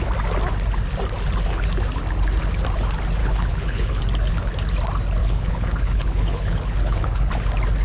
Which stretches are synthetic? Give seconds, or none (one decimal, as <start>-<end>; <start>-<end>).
3.2-4.0; 5.2-7.3

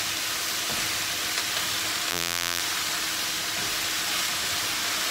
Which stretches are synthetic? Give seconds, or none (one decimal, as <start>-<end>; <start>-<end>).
2.1-2.6